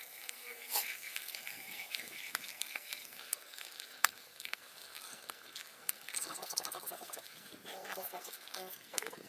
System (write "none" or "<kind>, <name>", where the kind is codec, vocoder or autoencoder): codec, SNAC